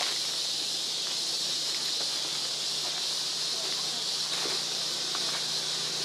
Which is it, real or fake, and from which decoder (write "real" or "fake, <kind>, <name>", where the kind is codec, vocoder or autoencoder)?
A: real